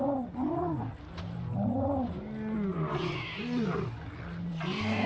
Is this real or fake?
real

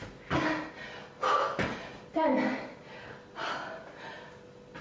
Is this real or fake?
real